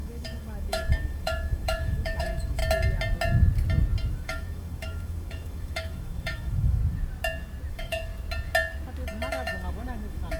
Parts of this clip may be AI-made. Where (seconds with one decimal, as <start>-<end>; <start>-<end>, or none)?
0.0-2.6; 4.1-6.8; 7.7-8.1; 9.3-10.4